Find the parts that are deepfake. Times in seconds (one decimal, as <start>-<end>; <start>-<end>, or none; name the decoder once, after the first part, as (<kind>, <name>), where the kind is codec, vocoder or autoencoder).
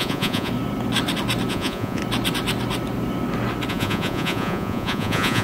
0.0-0.5 (vocoder, Vocos); 1.5-2.0; 3.7-5.4